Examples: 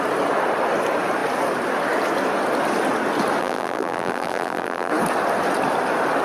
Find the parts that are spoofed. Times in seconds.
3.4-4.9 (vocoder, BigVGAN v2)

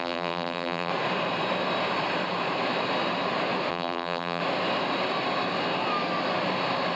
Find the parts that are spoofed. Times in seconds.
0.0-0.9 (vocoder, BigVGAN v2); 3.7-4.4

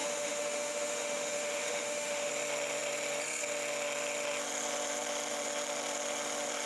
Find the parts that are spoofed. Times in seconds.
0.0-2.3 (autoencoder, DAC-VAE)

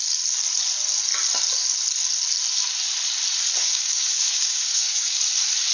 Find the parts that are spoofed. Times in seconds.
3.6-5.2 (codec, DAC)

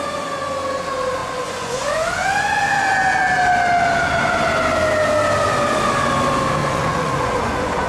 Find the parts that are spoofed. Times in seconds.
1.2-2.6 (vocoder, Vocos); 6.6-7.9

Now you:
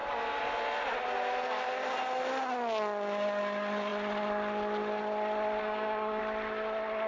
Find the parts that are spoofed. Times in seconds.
5.6-6.2 (codec, DAC)